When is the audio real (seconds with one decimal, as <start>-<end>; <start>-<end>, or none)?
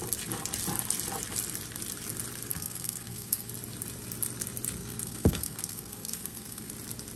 0.0-2.5; 3.5-4.8; 6.7-7.2